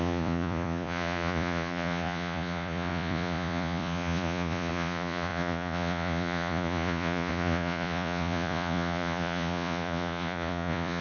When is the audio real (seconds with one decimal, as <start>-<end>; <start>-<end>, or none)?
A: none